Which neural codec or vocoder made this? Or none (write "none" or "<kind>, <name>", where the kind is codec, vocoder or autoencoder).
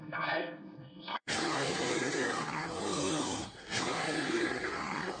codec, SNAC